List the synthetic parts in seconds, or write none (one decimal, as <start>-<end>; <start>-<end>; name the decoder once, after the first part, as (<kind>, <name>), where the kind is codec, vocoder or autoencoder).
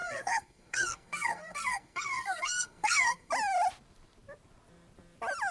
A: 0.0-3.3 (codec, SNAC)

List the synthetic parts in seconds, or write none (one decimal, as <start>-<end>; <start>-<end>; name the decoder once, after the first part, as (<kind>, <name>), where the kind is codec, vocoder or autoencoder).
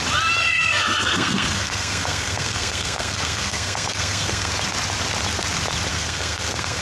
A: 0.4-4.5 (codec, SNAC); 5.9-6.8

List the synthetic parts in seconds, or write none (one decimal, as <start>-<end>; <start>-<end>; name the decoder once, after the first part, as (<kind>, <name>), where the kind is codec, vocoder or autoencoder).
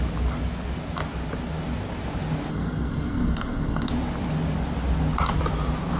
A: 2.5-3.9 (codec, SNAC)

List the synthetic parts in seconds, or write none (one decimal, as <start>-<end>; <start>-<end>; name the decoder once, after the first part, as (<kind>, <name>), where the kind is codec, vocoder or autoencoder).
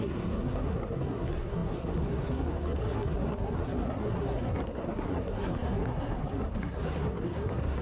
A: 0.0-7.8 (codec, SNAC)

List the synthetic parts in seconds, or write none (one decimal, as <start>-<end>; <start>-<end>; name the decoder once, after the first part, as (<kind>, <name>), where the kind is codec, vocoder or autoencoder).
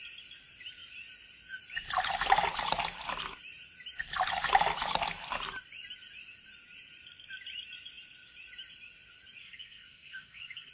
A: 9.4-10.7 (codec, SNAC)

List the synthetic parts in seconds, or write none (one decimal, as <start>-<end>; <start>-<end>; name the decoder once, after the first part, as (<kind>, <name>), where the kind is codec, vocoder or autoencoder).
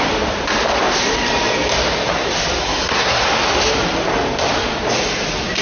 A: 2.6-3.2 (codec, SNAC)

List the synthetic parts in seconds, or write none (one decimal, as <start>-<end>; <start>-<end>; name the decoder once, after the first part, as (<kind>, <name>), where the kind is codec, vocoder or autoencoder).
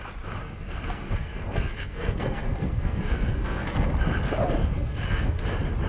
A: 0.4-3.9 (codec, SNAC); 4.6-5.4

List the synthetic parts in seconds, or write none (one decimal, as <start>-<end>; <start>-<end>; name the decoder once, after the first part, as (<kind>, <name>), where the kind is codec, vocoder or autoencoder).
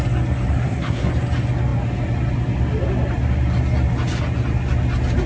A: 0.5-1.1 (codec, SNAC)